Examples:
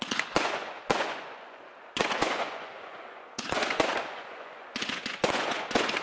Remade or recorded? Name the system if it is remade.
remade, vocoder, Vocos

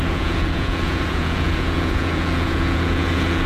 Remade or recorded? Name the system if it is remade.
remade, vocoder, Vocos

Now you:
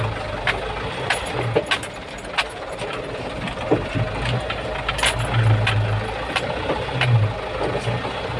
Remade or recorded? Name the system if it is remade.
recorded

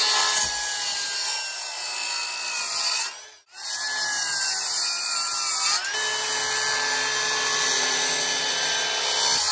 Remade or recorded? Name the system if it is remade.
recorded